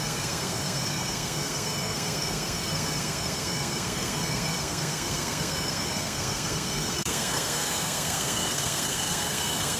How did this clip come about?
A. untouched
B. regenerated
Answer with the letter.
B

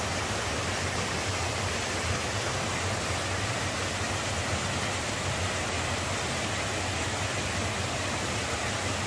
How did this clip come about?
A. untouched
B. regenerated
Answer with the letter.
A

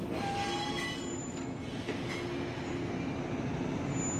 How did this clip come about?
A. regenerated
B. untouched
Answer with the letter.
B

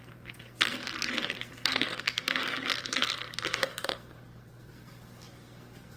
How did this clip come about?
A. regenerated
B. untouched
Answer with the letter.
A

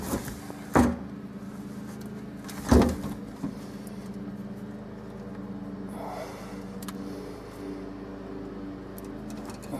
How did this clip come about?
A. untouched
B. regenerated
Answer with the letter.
A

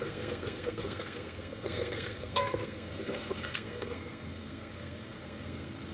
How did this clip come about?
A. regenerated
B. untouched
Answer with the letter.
A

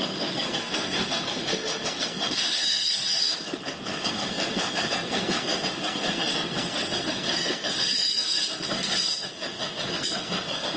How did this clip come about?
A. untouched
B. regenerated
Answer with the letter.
B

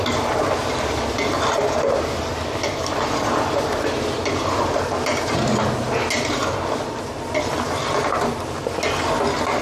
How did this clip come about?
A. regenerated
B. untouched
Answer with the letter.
B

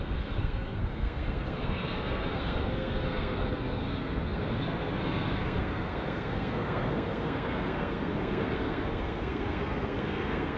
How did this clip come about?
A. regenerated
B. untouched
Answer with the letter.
A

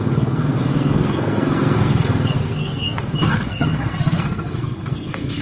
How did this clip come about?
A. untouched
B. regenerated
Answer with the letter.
B